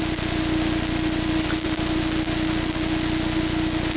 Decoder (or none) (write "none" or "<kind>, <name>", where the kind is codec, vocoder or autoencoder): none